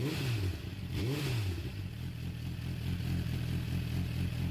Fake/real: real